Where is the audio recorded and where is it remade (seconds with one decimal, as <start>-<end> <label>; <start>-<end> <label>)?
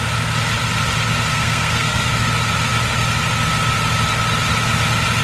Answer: 0.0-1.3 recorded; 1.3-2.1 remade; 2.1-5.2 recorded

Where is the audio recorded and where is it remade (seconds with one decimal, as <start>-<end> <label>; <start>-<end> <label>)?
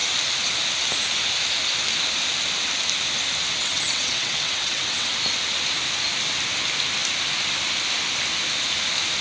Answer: 0.0-3.6 recorded; 3.6-5.1 remade; 5.1-9.2 recorded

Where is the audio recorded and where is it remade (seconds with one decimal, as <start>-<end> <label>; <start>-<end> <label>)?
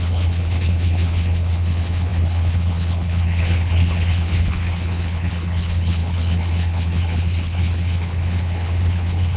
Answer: 0.0-9.4 remade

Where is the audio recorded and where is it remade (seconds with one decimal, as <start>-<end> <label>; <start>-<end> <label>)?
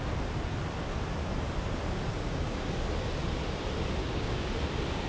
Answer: 0.0-2.1 recorded; 2.1-2.7 remade; 2.7-4.0 recorded; 4.0-4.5 remade; 4.5-5.1 recorded